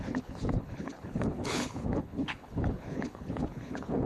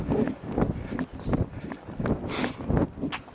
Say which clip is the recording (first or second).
second